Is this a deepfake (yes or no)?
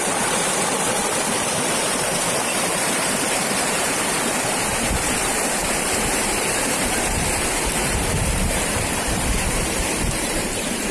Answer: yes